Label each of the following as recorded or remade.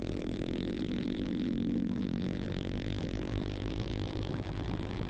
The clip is remade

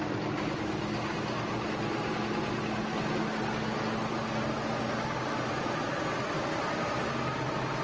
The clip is recorded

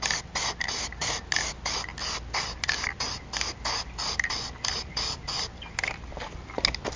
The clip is recorded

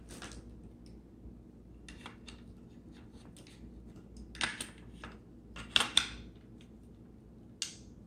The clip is recorded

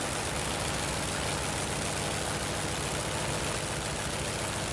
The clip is recorded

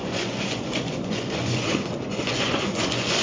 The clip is remade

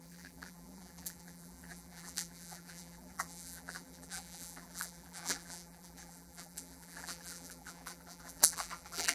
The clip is remade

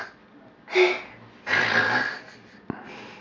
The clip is recorded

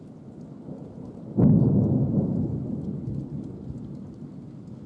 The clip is recorded